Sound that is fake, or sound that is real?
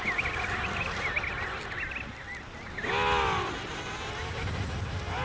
real